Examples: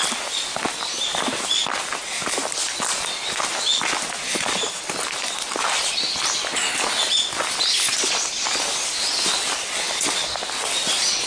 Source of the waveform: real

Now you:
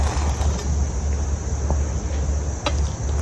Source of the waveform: real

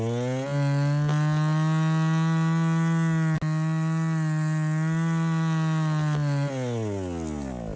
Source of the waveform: real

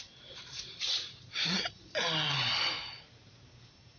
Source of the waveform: fake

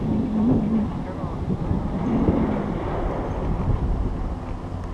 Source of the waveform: real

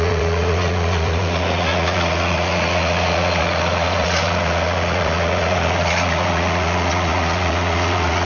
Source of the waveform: fake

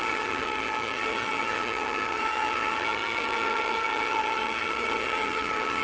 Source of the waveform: fake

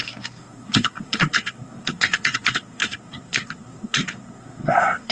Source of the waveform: fake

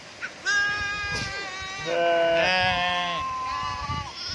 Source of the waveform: real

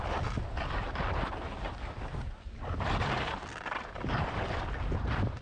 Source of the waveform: real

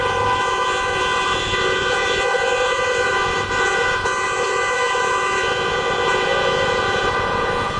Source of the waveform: fake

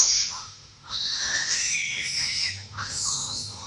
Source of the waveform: fake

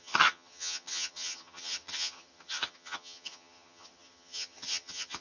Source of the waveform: fake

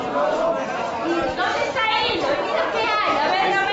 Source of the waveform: real